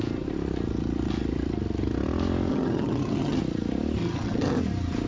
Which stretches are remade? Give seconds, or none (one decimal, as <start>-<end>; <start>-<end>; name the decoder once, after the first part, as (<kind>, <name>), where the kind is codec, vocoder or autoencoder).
2.5-3.4 (vocoder, HiFi-GAN); 4.0-4.6